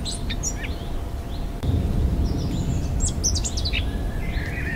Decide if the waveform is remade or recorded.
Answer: recorded